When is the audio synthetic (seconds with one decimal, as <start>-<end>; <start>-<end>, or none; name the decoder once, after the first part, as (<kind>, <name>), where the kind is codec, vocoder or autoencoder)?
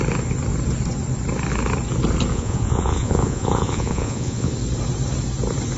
2.3-4.5 (vocoder, Vocos)